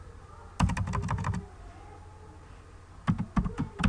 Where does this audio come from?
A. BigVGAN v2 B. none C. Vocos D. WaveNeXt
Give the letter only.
B